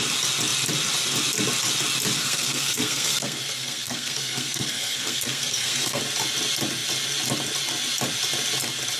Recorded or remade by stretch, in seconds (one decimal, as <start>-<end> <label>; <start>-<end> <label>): 0.0-2.2 recorded; 2.2-6.0 remade; 6.0-9.0 recorded